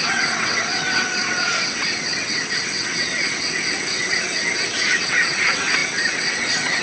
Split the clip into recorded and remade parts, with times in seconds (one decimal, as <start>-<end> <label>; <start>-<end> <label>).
0.0-6.8 remade